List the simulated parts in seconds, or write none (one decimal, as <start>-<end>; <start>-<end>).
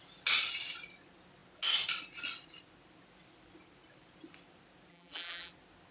4.9-5.5